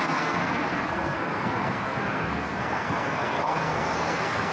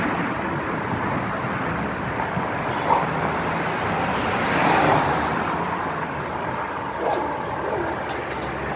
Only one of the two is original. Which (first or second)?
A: second